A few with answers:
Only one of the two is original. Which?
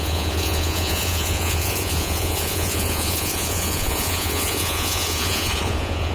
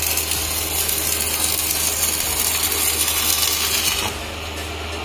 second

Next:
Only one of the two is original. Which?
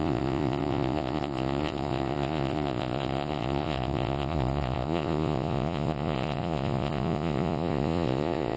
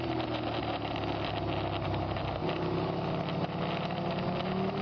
second